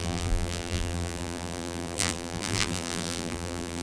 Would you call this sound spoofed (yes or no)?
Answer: yes